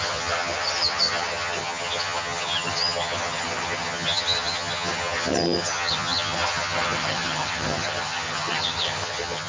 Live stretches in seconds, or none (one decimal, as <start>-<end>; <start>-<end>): none